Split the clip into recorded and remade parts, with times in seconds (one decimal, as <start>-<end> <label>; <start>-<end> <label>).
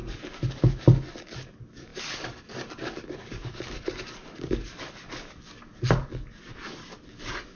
0.0-7.6 remade